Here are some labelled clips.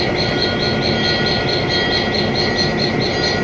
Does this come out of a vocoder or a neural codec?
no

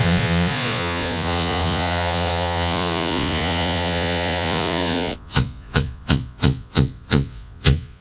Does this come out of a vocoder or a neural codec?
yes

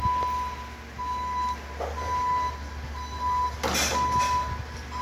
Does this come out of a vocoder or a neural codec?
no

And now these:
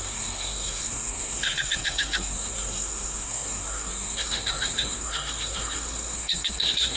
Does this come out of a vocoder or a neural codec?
yes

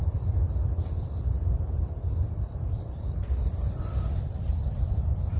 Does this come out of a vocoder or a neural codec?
yes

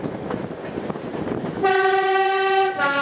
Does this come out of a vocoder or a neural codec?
yes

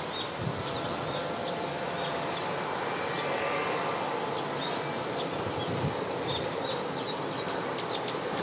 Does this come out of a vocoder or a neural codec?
no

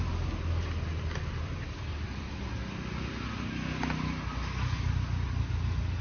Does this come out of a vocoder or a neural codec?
no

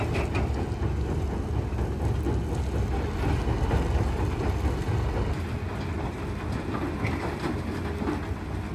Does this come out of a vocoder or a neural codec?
no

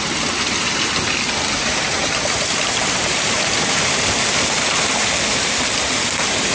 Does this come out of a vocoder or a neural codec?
no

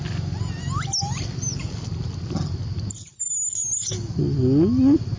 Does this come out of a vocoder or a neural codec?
no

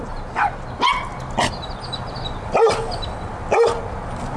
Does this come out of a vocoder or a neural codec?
no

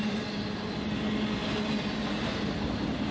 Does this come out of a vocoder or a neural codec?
no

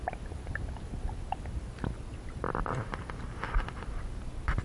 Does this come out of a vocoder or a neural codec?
no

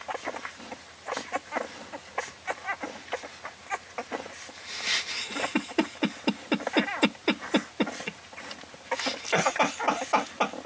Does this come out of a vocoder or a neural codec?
no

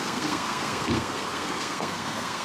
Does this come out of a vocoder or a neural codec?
yes